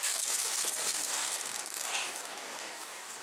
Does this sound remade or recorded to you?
remade